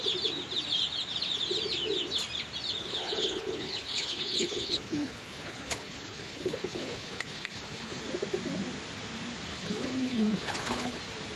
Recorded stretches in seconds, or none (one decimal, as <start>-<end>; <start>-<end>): 0.0-2.8; 8.0-9.5; 11.0-11.4